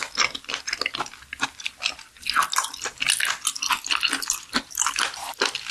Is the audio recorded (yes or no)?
yes